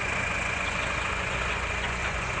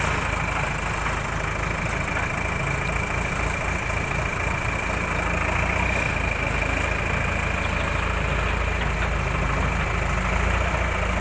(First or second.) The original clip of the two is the second